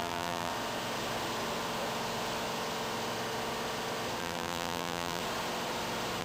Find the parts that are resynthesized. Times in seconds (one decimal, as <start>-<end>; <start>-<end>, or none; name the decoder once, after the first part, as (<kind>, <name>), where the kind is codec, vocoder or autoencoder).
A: 0.0-0.5 (vocoder, BigVGAN v2); 4.2-5.2